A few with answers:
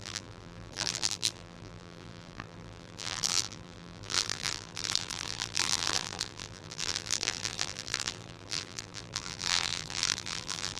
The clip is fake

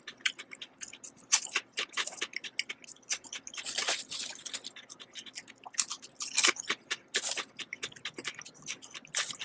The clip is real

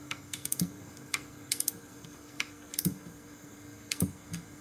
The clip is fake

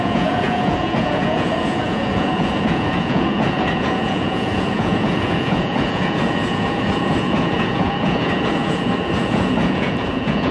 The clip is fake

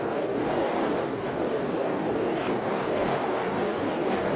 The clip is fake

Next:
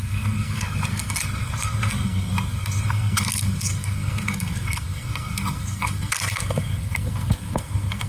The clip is fake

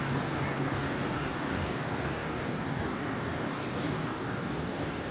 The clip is fake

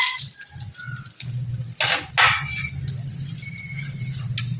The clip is real